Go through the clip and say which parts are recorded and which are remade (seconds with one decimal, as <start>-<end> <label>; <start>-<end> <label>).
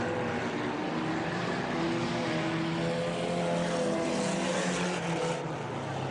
0.0-6.1 recorded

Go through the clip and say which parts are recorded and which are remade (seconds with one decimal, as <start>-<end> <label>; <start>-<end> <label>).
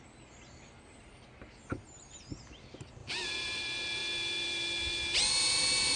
0.0-3.0 recorded; 3.0-3.6 remade; 3.6-6.0 recorded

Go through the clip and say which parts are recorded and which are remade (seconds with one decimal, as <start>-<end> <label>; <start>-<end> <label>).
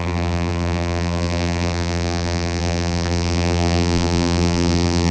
0.0-5.1 remade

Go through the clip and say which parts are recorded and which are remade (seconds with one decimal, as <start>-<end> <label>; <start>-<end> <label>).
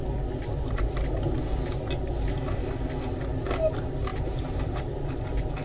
0.0-4.1 recorded; 4.1-5.1 remade; 5.1-5.6 recorded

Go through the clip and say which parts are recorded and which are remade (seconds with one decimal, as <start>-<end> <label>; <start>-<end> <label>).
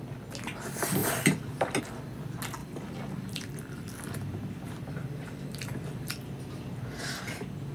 0.0-1.0 recorded; 1.0-1.8 remade; 1.8-2.6 recorded; 2.6-7.1 remade; 7.1-7.7 recorded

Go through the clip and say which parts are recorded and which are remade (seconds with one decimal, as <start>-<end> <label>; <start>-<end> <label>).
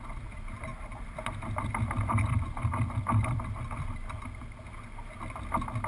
0.0-0.7 recorded; 0.7-4.2 remade; 4.2-5.9 recorded